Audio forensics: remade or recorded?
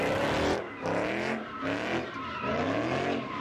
recorded